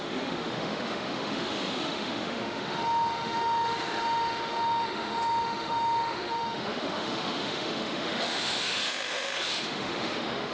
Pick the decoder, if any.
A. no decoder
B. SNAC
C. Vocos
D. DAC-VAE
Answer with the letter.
D